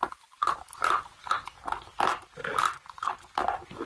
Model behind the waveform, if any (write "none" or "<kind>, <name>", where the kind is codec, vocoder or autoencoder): none